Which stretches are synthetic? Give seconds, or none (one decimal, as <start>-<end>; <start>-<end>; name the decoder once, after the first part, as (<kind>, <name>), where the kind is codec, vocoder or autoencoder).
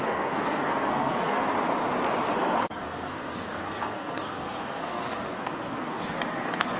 0.0-1.4 (codec, SNAC); 2.4-6.8